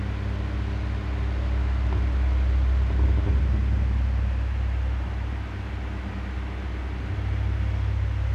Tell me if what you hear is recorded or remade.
recorded